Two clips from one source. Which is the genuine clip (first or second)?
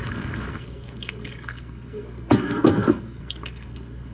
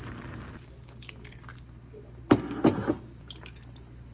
second